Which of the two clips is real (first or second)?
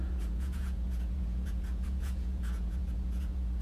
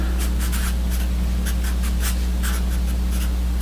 second